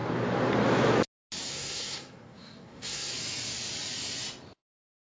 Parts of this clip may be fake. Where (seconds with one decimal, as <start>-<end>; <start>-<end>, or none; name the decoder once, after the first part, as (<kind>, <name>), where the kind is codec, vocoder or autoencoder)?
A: 1.5-3.1 (codec, SNAC)